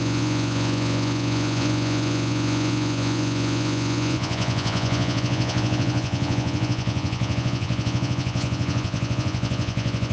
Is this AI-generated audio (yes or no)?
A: yes